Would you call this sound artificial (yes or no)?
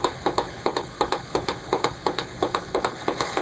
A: yes